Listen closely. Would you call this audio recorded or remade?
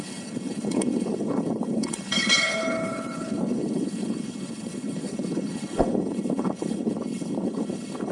remade